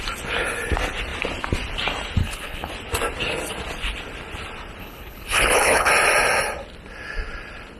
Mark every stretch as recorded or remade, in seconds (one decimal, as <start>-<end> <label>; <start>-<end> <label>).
0.0-2.2 recorded; 2.2-2.7 remade; 2.7-4.8 recorded; 4.8-5.9 remade; 5.9-7.8 recorded